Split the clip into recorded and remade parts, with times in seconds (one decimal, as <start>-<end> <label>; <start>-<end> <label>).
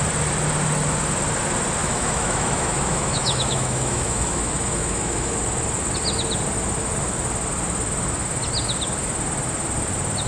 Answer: 0.0-1.8 recorded; 1.8-5.4 remade; 5.4-10.3 recorded